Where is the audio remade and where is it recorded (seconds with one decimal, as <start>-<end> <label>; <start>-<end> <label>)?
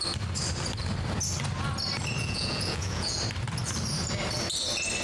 0.0-2.2 recorded; 2.2-3.2 remade; 3.2-5.0 recorded